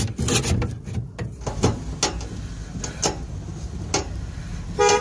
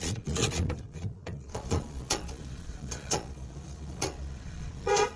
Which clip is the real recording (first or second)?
first